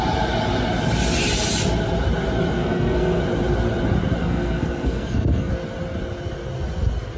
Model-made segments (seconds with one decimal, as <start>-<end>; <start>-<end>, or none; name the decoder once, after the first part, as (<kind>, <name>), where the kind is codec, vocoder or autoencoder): 2.6-3.2 (codec, SNAC); 4.2-5.5

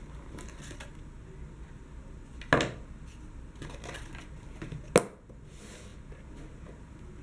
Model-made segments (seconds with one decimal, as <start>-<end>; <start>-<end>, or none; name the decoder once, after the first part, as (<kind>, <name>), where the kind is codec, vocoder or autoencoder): none